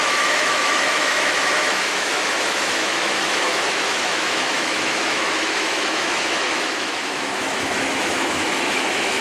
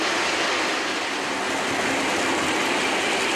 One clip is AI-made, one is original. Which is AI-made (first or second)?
first